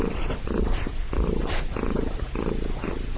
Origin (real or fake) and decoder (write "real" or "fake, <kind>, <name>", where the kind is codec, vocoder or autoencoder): real